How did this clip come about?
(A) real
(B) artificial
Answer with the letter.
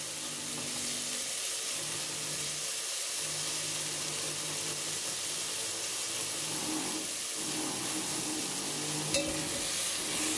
A